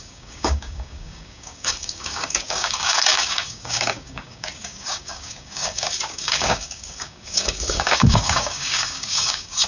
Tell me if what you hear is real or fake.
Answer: fake